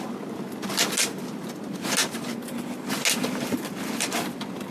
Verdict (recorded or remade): recorded